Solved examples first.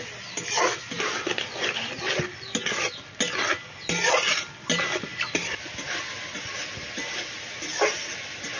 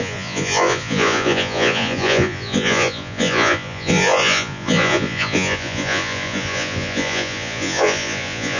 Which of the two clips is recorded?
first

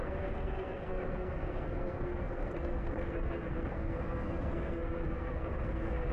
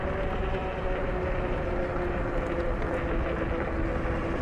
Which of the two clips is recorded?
second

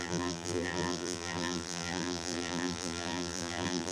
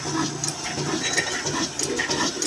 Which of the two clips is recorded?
second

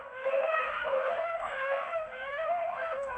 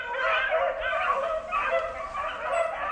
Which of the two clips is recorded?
second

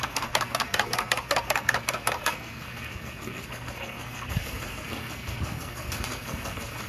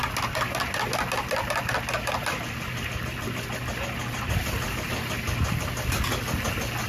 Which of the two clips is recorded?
second